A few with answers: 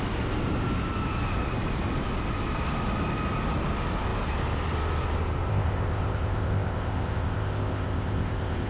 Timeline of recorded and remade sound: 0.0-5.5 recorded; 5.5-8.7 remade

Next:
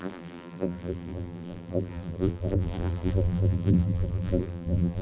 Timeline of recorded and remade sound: 0.0-5.0 remade

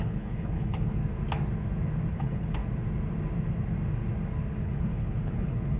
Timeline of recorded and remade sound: 0.0-1.0 remade; 1.0-2.1 recorded; 2.1-2.6 remade; 2.6-4.6 recorded; 4.6-5.8 remade

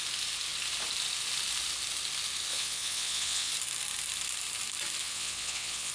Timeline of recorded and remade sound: 0.0-2.5 recorded; 2.5-3.5 remade; 3.5-5.0 recorded; 5.0-5.9 remade

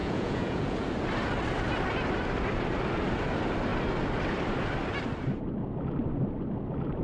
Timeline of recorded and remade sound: 0.0-0.9 remade; 0.9-7.0 recorded

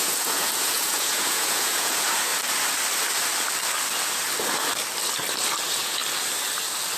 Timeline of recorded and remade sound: 0.0-2.3 remade; 2.3-5.6 recorded; 5.6-6.0 remade; 6.0-7.0 recorded